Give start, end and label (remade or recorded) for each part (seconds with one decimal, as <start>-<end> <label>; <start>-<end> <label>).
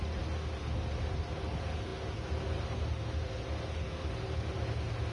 0.0-5.1 recorded